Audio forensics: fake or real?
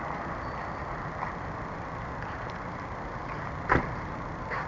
real